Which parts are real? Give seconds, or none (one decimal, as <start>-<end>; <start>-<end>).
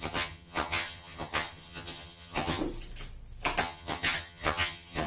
2.6-3.6